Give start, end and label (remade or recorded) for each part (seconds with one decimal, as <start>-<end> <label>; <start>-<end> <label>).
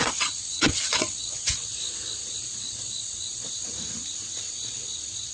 0.0-1.7 remade; 1.7-5.3 recorded